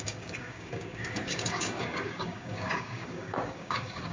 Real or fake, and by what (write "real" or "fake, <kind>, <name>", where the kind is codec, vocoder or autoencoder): fake, codec, DAC